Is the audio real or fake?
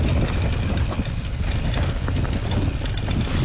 real